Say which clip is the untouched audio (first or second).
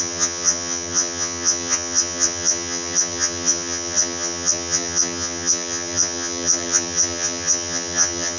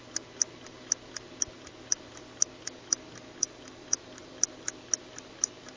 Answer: second